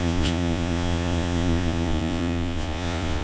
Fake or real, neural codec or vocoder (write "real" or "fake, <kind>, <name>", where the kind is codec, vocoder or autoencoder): fake, vocoder, Vocos